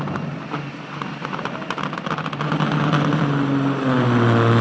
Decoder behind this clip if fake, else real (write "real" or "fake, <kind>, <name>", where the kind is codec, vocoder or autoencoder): real